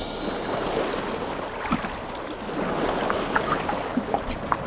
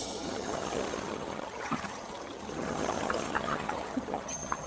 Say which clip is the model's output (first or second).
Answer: second